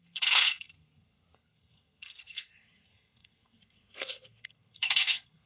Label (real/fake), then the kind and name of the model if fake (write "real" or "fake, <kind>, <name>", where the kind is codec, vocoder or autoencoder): fake, codec, SNAC